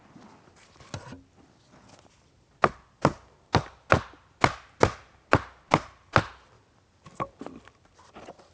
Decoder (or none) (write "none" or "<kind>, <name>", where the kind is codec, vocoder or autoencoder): none